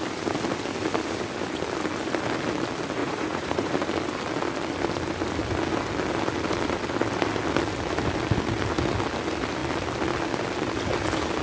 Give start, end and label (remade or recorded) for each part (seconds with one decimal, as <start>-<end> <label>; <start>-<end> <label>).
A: 0.0-3.0 recorded; 3.0-3.7 remade; 3.7-11.4 recorded